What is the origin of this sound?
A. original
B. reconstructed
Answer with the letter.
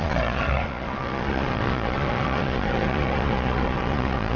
B